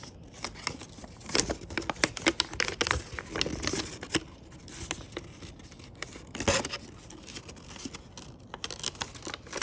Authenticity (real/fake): real